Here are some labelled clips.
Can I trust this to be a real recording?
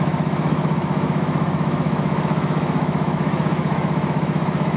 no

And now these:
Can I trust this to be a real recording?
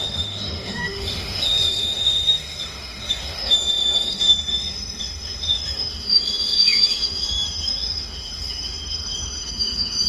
no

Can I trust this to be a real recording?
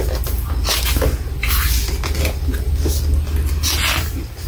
yes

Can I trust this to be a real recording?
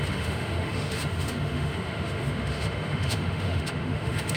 no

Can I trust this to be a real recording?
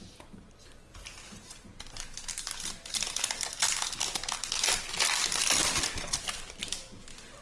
yes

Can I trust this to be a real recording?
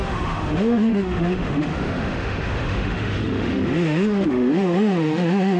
no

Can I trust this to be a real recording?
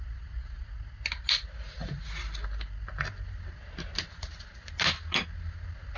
yes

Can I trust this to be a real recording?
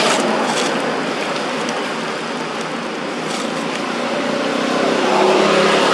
yes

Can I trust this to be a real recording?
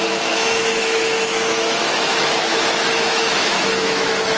no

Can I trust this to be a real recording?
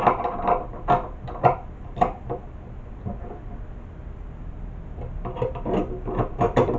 yes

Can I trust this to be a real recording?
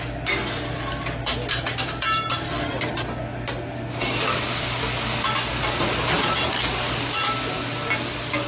yes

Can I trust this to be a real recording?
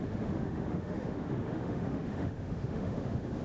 no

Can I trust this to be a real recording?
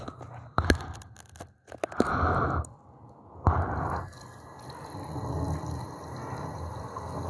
yes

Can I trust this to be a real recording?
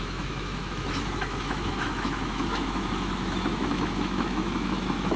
no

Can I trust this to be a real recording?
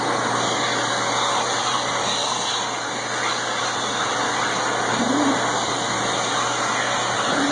yes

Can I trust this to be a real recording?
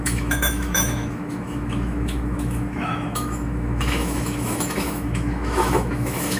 no